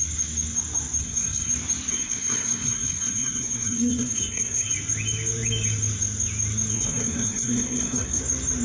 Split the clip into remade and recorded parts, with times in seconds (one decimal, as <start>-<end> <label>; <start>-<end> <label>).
0.0-1.0 recorded; 1.0-1.5 remade; 1.5-1.9 recorded; 1.9-4.7 remade; 4.7-6.7 recorded; 6.7-8.2 remade; 8.2-8.6 recorded